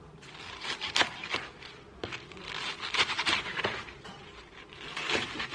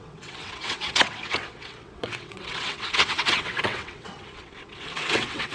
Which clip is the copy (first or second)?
second